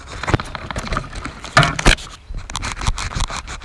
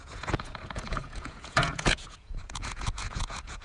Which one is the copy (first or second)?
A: second